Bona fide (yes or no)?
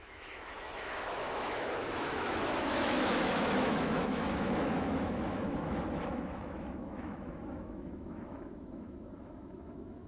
no